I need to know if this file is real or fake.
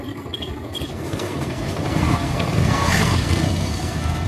fake